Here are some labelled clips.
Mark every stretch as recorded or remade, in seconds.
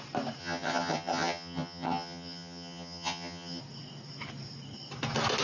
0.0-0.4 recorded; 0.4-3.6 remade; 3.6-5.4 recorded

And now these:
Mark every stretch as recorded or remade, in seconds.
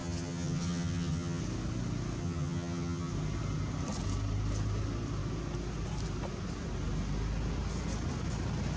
0.0-1.4 remade; 1.4-2.2 recorded; 2.2-3.1 remade; 3.1-8.8 recorded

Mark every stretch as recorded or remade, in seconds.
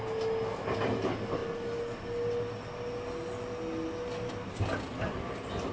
0.0-5.7 recorded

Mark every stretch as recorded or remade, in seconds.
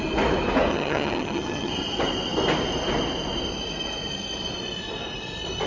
0.0-0.7 recorded; 0.7-1.7 remade; 1.7-5.7 recorded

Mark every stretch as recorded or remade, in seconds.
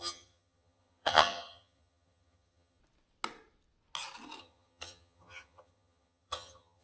0.0-2.8 remade; 2.8-4.4 recorded; 4.4-6.8 remade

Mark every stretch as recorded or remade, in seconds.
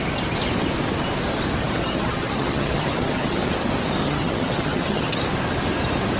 0.0-1.6 recorded; 1.6-3.4 remade; 3.4-4.0 recorded; 4.0-5.2 remade; 5.2-6.2 recorded